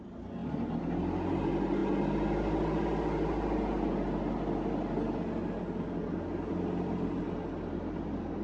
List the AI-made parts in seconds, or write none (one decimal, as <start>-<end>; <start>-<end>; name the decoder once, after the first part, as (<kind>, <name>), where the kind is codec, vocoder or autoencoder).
none